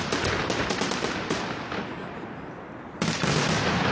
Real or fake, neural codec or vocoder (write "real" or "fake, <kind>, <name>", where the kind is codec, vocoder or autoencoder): real